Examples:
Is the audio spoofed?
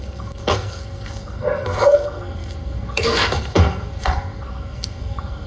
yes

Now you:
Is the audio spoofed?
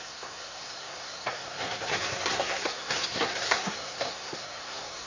yes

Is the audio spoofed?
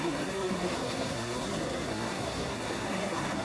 yes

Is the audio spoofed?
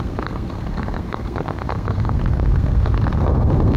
yes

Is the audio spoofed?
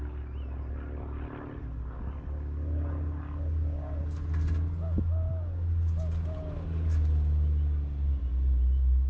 no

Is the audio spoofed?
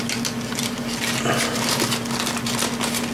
no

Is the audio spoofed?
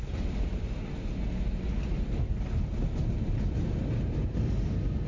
no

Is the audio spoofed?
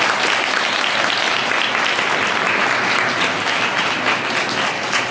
no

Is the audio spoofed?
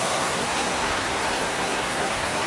yes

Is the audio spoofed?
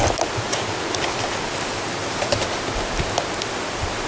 no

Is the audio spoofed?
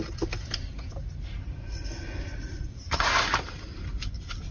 no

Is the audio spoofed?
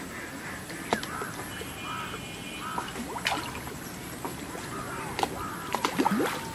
no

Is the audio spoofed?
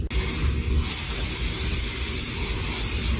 no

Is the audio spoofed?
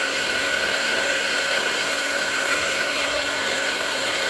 yes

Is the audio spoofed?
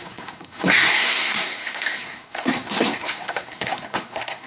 yes